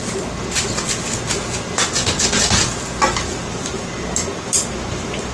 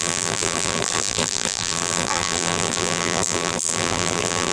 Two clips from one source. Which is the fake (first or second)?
second